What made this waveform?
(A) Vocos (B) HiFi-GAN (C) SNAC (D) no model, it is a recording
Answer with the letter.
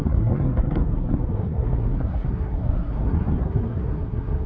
C